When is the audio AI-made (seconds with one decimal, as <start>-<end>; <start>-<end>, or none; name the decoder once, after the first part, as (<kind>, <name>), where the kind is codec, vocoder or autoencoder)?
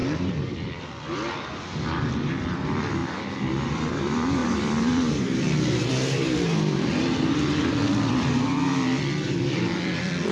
0.0-3.0 (vocoder, BigVGAN v2); 4.0-10.3